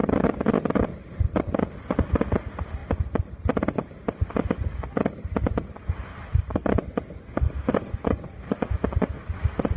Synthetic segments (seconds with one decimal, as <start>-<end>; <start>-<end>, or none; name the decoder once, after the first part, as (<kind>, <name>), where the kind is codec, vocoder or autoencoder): none